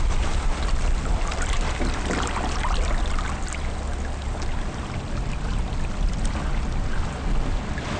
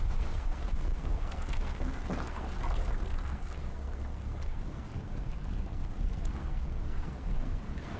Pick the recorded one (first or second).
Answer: first